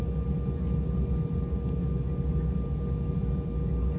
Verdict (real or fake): real